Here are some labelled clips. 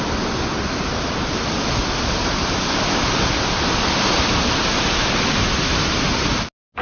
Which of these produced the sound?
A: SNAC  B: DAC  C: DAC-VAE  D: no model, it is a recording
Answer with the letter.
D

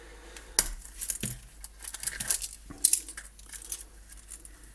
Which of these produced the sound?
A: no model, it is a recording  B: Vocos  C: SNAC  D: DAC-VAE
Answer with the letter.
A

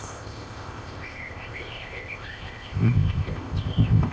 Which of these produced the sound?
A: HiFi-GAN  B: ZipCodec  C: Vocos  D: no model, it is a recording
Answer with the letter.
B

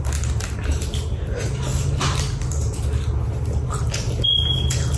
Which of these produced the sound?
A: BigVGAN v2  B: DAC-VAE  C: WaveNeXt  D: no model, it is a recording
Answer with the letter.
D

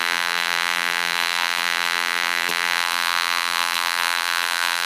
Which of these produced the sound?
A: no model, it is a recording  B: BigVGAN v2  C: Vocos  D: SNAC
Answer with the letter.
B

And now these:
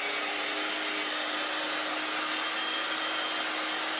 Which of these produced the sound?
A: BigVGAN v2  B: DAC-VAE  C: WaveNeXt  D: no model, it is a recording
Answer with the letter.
D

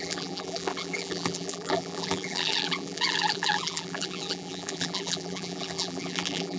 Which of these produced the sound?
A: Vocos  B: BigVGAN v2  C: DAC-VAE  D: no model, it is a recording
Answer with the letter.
B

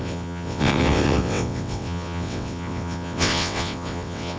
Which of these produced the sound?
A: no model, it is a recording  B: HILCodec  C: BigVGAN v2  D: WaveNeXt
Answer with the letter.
D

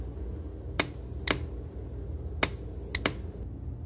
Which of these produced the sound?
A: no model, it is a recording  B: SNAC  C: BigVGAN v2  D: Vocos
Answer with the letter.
A